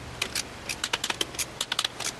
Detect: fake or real real